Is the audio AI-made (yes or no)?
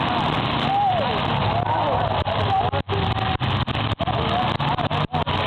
no